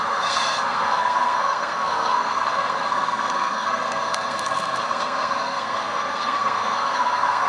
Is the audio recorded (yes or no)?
no